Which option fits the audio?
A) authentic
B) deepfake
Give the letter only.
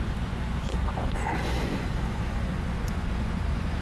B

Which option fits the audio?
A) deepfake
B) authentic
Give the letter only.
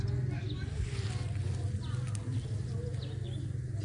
B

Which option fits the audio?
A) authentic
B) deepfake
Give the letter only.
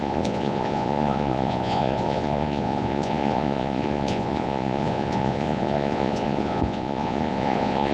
B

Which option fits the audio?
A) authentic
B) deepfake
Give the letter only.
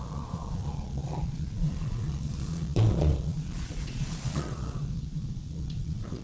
B